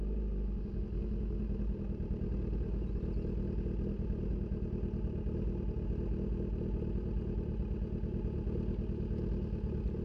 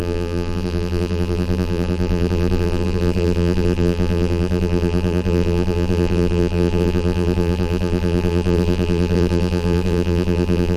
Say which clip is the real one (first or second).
first